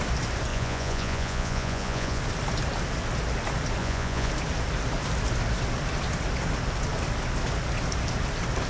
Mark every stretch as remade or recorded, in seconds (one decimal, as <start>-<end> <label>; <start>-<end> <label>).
0.0-0.5 recorded; 0.5-2.2 remade; 2.2-3.8 recorded; 3.8-4.3 remade; 4.3-8.7 recorded